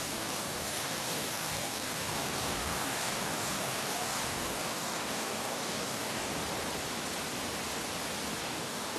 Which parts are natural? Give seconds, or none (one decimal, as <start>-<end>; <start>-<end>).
6.3-8.4